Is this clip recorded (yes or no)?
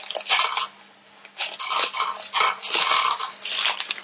yes